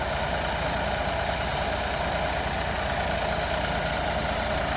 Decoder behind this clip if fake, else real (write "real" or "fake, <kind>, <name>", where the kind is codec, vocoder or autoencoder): real